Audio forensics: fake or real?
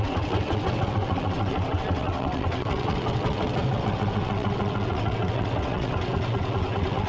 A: fake